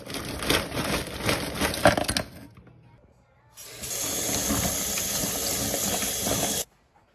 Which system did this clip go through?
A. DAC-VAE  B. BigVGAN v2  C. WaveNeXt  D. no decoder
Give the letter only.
D